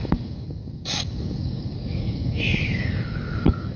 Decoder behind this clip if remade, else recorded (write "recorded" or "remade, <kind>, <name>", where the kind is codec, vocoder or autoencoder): remade, codec, DAC